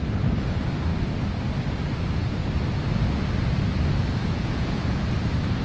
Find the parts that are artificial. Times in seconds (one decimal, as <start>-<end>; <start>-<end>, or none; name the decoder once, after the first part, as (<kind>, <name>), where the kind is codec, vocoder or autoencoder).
4.2-5.0 (vocoder, Vocos)